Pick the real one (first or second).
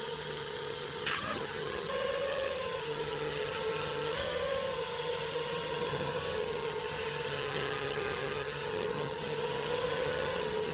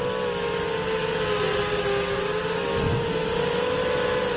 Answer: second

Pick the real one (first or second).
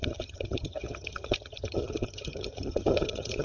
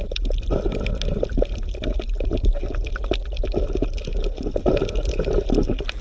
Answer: second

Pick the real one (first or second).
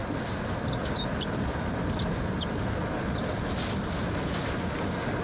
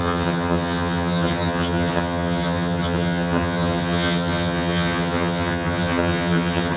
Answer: first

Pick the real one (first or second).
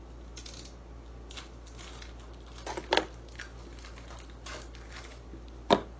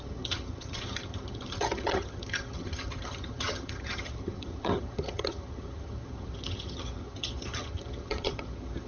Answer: first